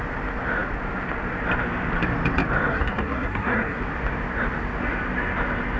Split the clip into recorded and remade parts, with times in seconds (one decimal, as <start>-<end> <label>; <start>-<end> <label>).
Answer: 0.0-2.7 recorded; 2.7-3.8 remade; 3.8-5.8 recorded